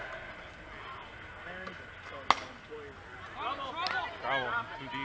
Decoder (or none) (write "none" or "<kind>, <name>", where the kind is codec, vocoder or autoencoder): none